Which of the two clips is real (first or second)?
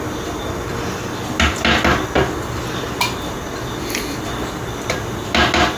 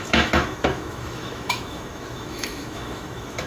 first